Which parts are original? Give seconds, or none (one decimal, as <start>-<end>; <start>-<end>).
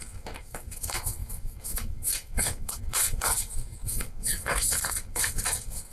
none